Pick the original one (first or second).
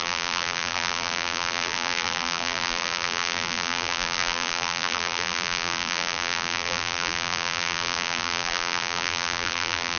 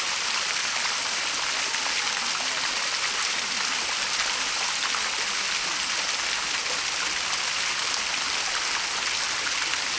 second